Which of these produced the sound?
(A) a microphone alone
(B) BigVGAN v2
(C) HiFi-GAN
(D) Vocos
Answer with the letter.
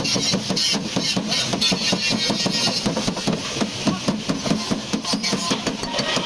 A